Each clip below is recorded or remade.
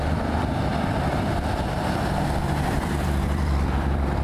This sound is remade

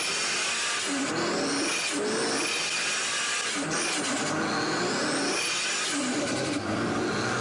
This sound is recorded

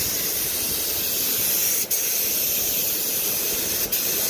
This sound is recorded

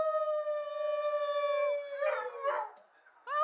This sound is recorded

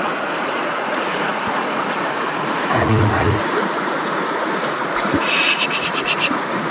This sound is remade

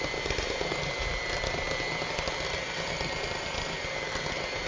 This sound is recorded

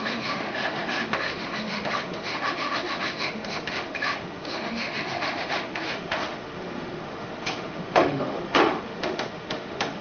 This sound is remade